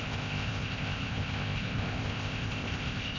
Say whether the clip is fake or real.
fake